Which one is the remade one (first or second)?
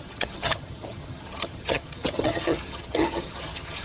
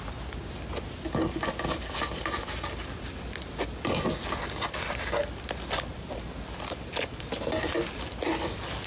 first